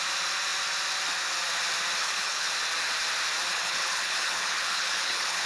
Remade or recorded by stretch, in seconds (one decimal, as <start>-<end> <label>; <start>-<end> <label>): 0.0-2.0 recorded; 2.0-2.5 remade; 2.5-3.5 recorded; 3.5-5.5 remade